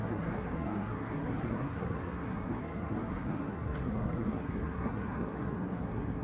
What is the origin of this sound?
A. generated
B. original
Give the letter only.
A